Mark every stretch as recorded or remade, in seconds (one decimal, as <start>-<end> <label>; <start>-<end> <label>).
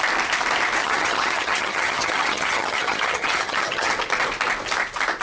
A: 0.0-0.8 recorded; 0.8-3.9 remade; 3.9-5.2 recorded